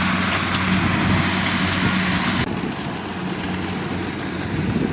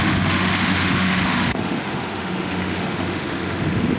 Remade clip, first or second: second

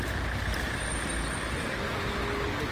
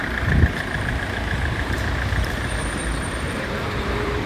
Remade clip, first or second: second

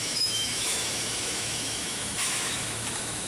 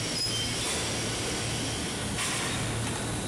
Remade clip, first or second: first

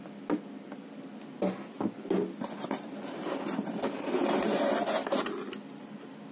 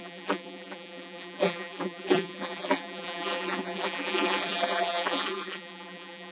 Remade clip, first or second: second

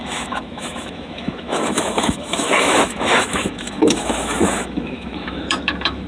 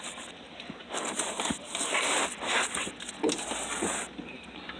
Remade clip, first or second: first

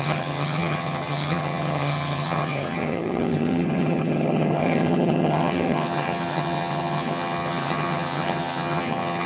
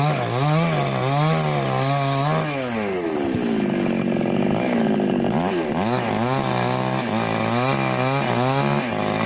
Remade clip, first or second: first